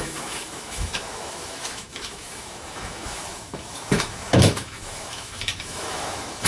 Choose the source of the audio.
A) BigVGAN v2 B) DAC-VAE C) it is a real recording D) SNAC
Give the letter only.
B